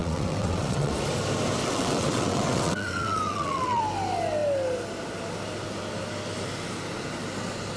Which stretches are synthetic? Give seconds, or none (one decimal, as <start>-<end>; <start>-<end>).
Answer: 0.0-0.9; 1.6-3.8